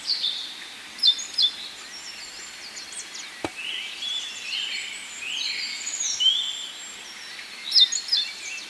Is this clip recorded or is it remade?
recorded